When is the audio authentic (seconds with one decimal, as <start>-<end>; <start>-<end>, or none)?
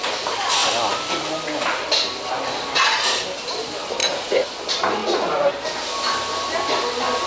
0.0-4.0; 4.5-5.0; 5.5-7.3